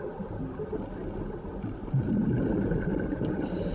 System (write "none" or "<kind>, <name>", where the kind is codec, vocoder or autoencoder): none